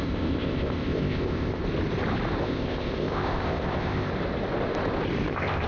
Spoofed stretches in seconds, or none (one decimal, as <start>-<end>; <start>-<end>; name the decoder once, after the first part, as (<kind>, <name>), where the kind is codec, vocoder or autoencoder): 0.0-1.6 (codec, ZipCodec); 2.4-4.1; 5.3-5.7